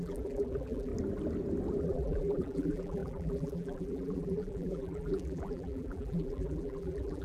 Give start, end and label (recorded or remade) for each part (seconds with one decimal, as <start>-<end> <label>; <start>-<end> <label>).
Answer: 0.0-0.9 remade; 0.9-1.8 recorded; 1.8-7.2 remade